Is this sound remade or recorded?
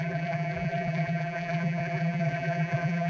remade